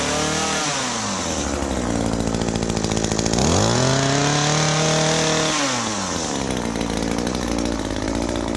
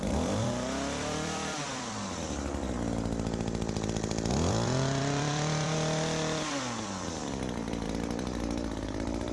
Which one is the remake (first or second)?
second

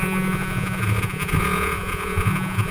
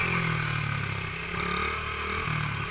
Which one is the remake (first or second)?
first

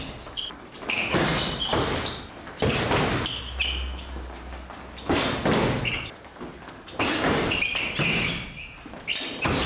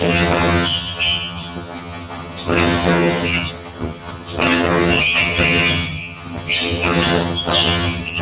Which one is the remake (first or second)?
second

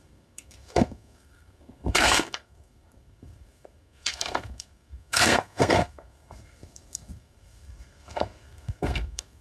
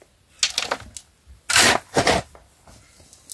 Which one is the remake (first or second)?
first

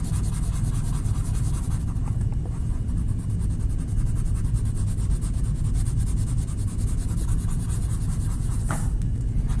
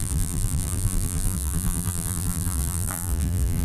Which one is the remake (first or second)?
second